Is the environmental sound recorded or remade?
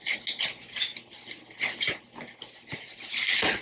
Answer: recorded